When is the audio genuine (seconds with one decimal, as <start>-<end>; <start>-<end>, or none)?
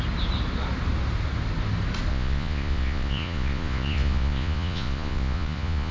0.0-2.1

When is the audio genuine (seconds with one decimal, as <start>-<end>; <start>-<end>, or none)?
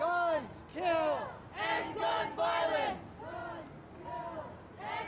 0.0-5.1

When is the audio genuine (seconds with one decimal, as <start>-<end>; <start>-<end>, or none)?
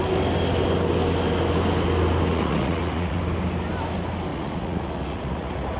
0.0-2.3; 3.2-4.3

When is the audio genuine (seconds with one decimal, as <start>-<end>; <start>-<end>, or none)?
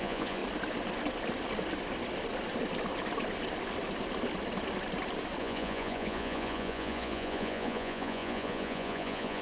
0.4-5.4